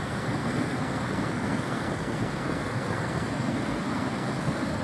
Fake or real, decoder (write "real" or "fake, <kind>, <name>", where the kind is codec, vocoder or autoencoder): fake, codec, SNAC